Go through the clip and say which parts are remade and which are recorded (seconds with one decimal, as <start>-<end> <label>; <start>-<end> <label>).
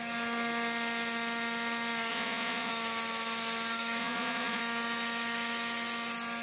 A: 0.0-2.1 recorded; 2.1-2.7 remade; 2.7-4.0 recorded; 4.0-4.6 remade; 4.6-6.4 recorded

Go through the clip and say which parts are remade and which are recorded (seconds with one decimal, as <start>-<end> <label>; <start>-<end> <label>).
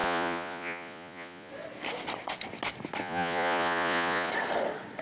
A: 0.0-1.5 remade; 1.5-3.0 recorded; 3.0-4.3 remade; 4.3-5.0 recorded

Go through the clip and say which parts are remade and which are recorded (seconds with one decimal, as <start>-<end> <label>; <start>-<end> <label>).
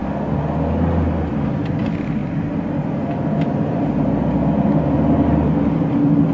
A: 0.0-6.3 recorded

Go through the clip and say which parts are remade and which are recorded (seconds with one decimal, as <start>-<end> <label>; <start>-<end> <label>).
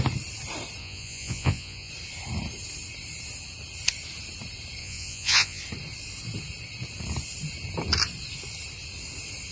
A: 0.0-0.8 recorded; 0.8-1.9 remade; 1.9-4.8 recorded; 4.8-5.6 remade; 5.6-9.5 recorded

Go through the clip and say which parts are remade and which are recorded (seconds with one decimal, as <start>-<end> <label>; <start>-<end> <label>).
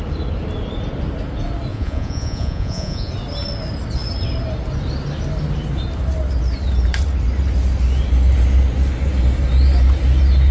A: 0.0-1.7 recorded; 1.7-3.1 remade; 3.1-10.5 recorded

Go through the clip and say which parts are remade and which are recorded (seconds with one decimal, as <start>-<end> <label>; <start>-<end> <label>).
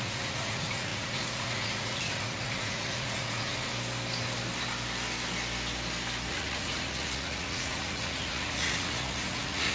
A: 0.0-3.7 remade; 3.7-6.3 recorded; 6.3-9.7 remade